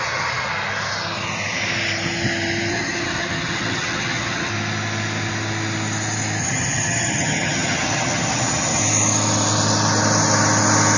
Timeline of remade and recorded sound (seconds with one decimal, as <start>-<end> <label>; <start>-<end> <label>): 0.0-0.5 remade; 0.5-2.7 recorded; 2.7-4.5 remade; 4.5-6.4 recorded; 6.4-8.8 remade; 8.8-11.0 recorded